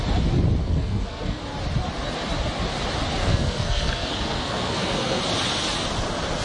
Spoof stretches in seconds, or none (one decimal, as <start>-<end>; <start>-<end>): 0.6-1.4; 3.2-5.2

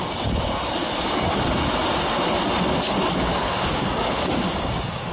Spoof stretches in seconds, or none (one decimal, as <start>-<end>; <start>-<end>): 3.1-5.1

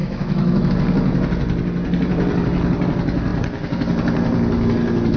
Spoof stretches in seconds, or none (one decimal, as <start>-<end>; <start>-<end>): 0.0-0.7